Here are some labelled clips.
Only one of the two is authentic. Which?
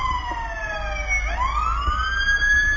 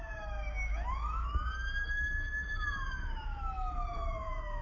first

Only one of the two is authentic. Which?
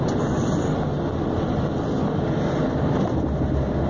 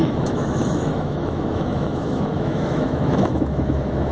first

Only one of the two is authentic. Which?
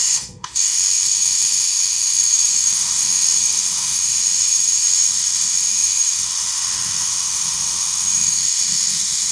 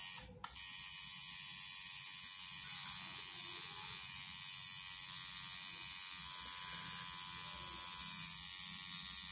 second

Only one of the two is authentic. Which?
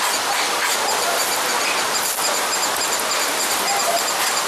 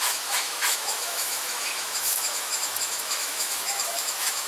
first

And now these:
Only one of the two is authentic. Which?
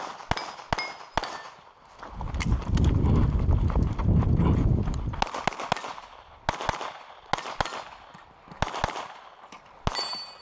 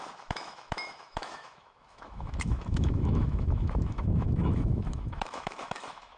first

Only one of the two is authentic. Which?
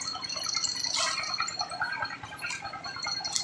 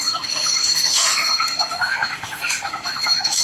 first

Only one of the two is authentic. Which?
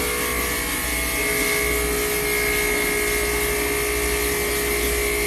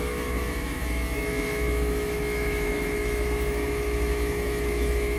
first